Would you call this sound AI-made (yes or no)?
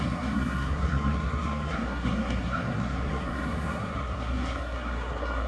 yes